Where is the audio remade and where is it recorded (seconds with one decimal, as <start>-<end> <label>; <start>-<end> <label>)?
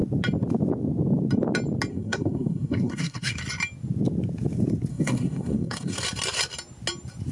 0.0-1.9 recorded; 1.9-3.4 remade; 3.4-4.9 recorded; 4.9-6.0 remade; 6.0-7.3 recorded